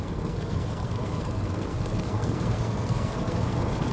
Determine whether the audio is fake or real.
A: fake